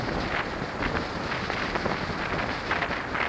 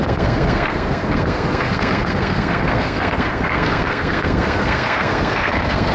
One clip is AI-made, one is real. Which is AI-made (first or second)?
second